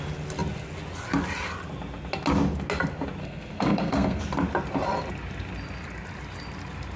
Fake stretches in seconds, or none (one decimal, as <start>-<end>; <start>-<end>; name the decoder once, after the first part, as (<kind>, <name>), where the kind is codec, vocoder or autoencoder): 3.2-4.2 (codec, SNAC)